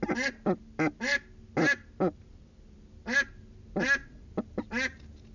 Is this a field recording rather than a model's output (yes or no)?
yes